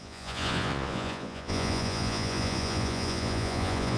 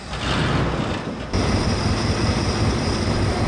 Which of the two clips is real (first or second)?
second